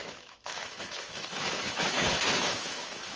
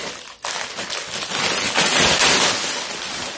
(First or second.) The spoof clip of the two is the first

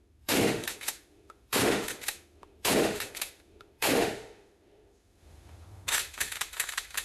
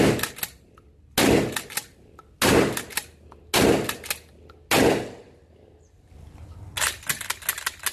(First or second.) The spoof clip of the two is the first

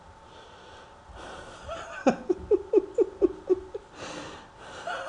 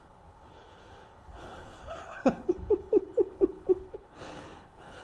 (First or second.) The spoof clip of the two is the second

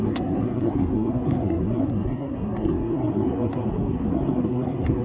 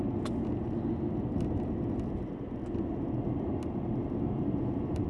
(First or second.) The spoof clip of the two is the first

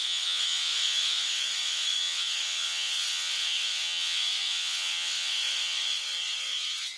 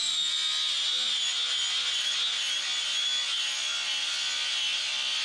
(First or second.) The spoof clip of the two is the first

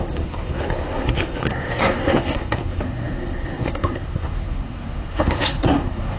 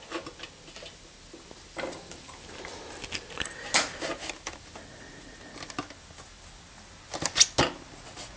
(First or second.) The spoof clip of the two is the first